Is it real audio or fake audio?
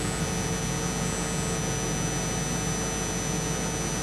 real